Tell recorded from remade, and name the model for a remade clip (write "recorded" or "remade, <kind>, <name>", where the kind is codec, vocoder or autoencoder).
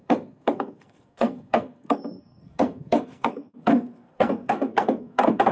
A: remade, codec, SNAC